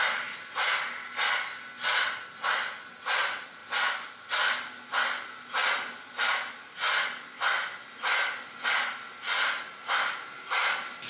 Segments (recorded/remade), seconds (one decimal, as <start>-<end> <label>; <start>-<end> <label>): 0.0-11.1 recorded